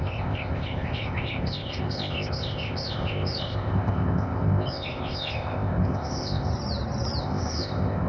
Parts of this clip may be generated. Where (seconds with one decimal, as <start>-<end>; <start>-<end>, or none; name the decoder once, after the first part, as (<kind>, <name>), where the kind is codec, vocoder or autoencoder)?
0.0-6.5 (codec, ZipCodec); 7.2-8.1